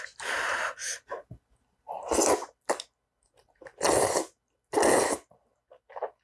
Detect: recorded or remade recorded